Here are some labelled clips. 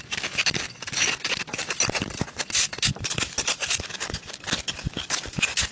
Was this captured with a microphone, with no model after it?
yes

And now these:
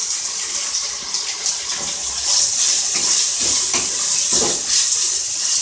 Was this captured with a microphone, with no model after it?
yes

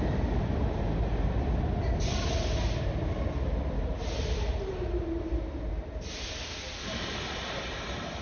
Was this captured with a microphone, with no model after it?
yes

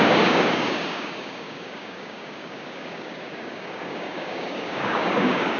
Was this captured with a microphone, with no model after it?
no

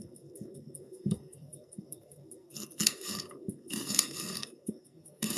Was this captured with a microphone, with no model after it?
no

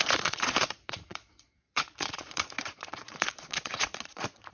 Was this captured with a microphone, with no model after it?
no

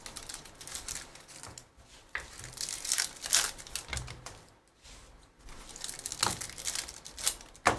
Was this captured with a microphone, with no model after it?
yes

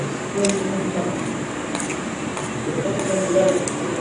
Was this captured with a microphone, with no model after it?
yes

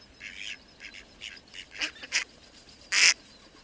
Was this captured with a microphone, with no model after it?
yes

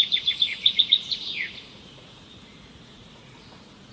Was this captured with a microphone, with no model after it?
no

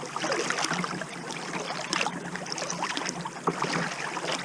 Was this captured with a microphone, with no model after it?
yes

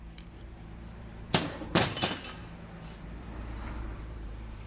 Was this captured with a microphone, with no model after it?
no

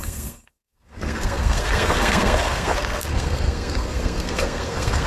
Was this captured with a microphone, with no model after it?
no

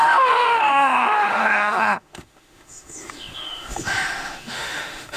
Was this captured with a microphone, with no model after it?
no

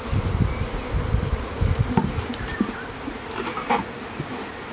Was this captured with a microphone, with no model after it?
yes